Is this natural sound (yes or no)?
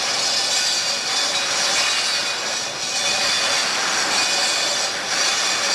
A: yes